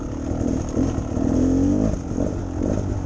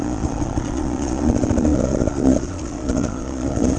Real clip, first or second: first